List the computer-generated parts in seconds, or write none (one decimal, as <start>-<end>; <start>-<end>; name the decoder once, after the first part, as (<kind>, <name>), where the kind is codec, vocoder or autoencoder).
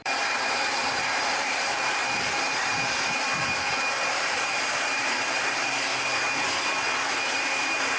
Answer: 0.0-2.0 (vocoder, BigVGAN v2); 4.0-5.9